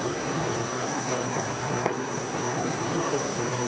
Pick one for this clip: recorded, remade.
remade